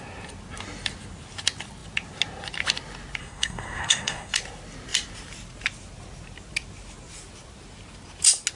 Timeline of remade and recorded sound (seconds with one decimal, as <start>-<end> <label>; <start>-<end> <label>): 0.0-3.2 recorded; 3.2-4.3 remade; 4.3-8.6 recorded